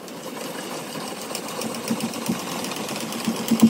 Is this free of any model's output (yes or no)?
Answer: yes